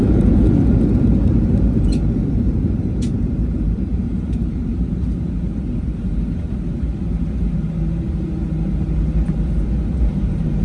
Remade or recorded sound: remade